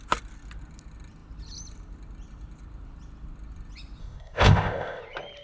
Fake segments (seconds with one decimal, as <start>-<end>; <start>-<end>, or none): 4.0-5.0